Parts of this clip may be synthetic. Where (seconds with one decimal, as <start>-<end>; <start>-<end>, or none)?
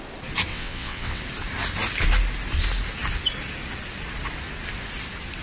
0.5-1.2